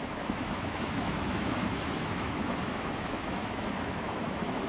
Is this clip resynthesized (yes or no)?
yes